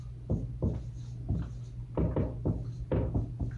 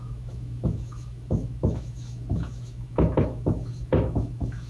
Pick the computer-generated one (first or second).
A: second